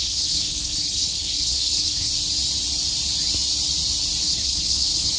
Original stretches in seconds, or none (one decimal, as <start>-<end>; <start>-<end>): 2.1-4.2

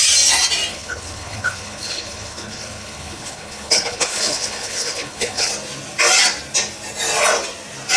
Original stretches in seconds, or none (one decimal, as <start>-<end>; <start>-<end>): 0.0-0.7; 5.5-8.0

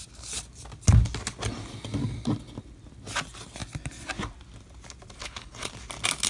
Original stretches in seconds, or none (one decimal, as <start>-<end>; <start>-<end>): 0.0-5.2; 5.7-6.3

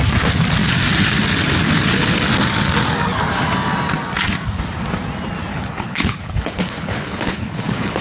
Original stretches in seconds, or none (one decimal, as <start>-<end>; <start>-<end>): 0.0-5.5

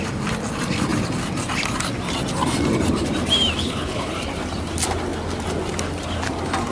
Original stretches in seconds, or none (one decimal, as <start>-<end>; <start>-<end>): 0.0-3.6; 4.1-6.7

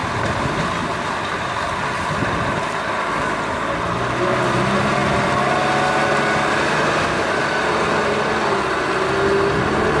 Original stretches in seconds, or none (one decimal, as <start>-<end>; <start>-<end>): 0.0-10.0

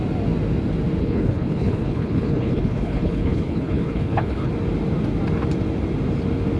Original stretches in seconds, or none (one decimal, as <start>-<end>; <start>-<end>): 0.0-1.0; 4.5-6.6

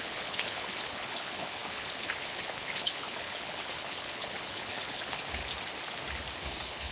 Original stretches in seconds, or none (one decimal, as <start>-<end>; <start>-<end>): 5.4-6.4